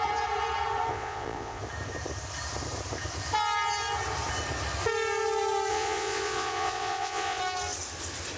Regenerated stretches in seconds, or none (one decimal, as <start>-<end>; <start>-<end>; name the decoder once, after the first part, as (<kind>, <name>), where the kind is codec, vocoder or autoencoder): 0.9-1.6 (vocoder, Vocos); 5.7-7.4